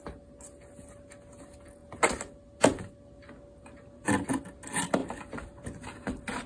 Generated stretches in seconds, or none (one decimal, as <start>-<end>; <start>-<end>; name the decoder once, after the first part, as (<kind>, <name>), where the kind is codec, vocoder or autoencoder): none